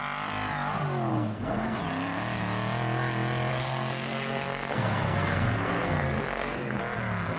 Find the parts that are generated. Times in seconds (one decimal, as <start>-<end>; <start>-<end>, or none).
1.1-1.8; 3.5-6.8